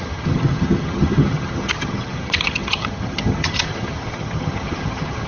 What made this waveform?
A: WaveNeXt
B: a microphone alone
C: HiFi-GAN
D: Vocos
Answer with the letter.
C